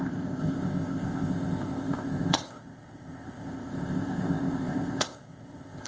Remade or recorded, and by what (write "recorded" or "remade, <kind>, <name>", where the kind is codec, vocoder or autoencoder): remade, codec, ZipCodec